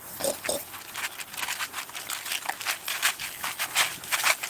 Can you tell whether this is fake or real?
real